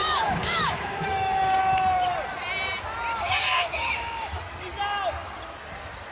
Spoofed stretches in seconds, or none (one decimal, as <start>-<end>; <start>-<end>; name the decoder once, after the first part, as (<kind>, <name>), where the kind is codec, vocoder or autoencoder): 0.0-1.6 (codec, DAC); 3.1-4.4